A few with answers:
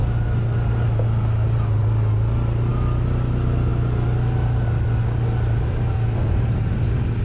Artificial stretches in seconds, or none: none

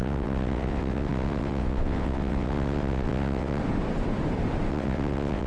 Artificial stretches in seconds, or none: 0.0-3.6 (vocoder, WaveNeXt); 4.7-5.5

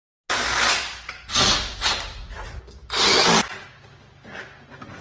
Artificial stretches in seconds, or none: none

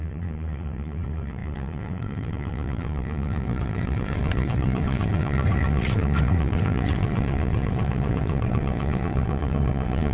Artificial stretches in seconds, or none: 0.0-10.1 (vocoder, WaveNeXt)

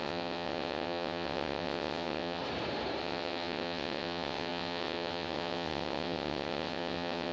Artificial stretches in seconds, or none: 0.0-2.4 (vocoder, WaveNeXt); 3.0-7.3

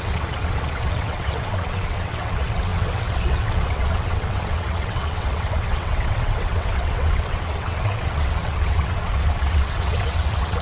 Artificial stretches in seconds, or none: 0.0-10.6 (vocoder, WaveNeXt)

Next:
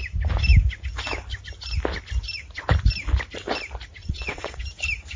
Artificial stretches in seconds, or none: 4.0-4.6 (vocoder, WaveNeXt)

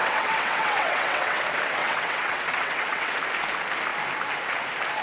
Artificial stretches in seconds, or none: 0.0-1.4 (vocoder, WaveNeXt); 1.8-3.1